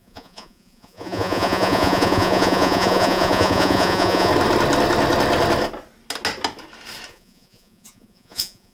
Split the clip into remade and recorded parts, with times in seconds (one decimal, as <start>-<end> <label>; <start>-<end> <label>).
0.0-4.3 remade; 4.3-7.1 recorded; 7.1-8.7 remade